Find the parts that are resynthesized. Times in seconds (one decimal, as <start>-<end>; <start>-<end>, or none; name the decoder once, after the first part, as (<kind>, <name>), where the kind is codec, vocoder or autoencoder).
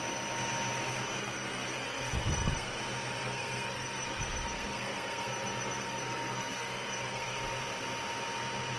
1.2-2.8 (codec, SNAC); 3.2-7.4